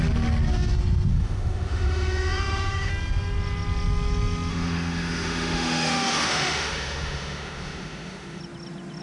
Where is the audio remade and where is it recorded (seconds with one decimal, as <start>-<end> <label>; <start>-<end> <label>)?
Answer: 0.0-1.1 recorded; 1.1-2.9 remade; 2.9-4.5 recorded; 4.5-8.4 remade; 8.4-9.0 recorded